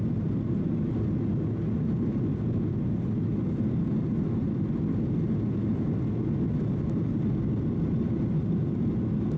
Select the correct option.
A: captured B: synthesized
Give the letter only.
A